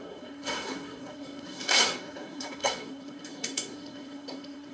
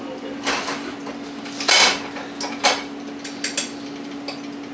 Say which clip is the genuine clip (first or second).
second